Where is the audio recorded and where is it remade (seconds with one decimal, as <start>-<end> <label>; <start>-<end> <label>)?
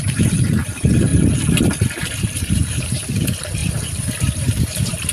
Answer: 0.0-1.1 remade; 1.1-2.2 recorded; 2.2-5.1 remade